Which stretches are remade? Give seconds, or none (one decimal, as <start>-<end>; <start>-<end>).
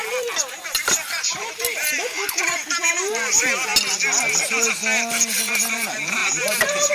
0.0-3.7; 4.3-4.8; 5.7-6.9